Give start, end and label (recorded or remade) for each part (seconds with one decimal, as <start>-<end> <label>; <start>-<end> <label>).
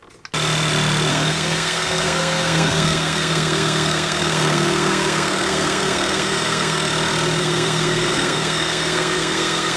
0.0-1.1 recorded; 1.1-6.9 remade; 6.9-7.4 recorded; 7.4-9.8 remade